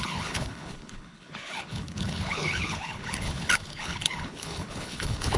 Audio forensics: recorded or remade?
remade